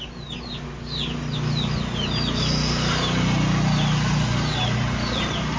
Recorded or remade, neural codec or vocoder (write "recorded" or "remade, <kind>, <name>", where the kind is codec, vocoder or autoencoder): recorded